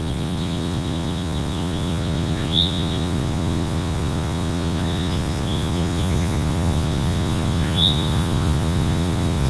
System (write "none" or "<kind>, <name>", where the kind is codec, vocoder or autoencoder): vocoder, Vocos